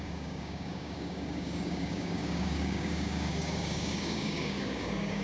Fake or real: fake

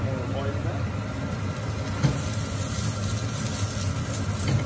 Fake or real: real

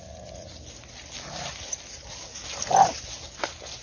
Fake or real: real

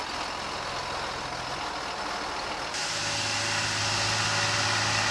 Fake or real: real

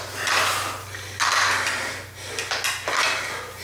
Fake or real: real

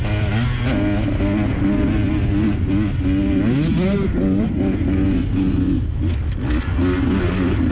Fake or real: real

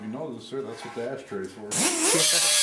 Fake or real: real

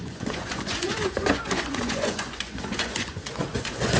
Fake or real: fake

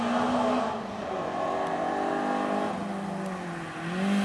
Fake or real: real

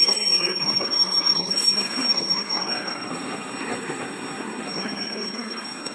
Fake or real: fake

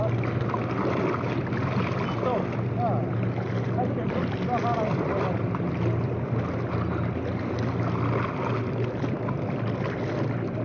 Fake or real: real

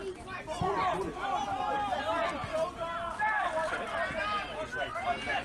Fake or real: real